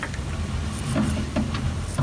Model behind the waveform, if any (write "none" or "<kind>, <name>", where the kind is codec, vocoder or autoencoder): none